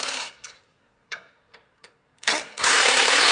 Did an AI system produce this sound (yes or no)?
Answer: yes